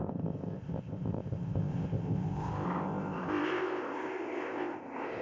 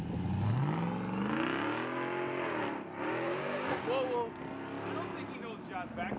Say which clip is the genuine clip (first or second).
second